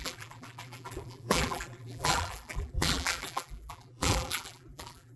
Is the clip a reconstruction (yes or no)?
yes